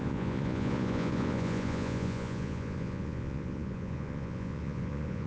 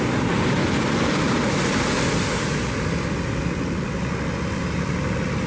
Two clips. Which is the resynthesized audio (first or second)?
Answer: first